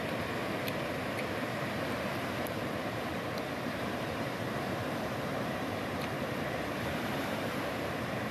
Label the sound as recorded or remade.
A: remade